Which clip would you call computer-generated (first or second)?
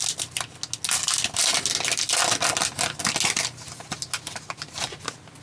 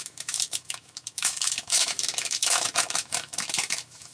second